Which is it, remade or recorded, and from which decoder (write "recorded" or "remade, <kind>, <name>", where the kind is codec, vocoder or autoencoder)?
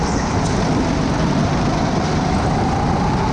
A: recorded